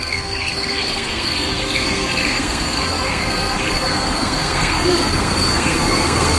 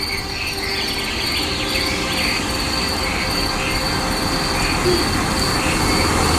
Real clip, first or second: second